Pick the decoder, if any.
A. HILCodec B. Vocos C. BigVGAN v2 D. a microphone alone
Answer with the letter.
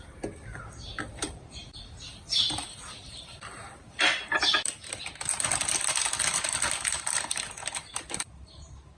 C